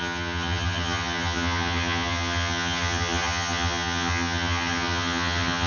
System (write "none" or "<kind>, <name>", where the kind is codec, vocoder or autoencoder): vocoder, HiFi-GAN